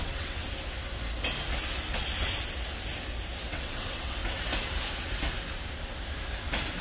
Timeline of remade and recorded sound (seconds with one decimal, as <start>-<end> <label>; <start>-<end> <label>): 0.0-0.4 remade; 0.4-3.5 recorded; 3.5-4.2 remade; 4.2-6.8 recorded